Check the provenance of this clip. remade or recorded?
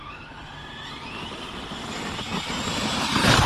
remade